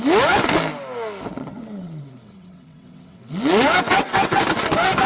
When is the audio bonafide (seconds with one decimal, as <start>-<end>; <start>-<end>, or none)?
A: 0.0-1.3; 3.3-3.9; 4.4-5.1